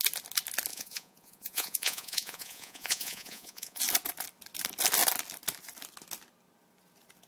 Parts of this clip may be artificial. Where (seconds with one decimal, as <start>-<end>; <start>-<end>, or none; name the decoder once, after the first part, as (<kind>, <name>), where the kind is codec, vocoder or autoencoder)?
0.7-3.8 (vocoder, Vocos)